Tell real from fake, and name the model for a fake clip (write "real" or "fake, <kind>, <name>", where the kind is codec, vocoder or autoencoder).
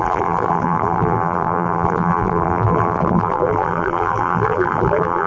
fake, vocoder, BigVGAN v2